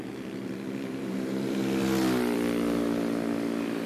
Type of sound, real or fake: fake